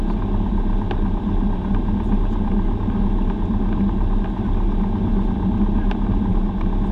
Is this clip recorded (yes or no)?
yes